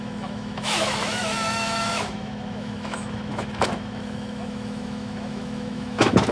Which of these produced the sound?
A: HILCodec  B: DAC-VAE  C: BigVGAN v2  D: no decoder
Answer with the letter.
B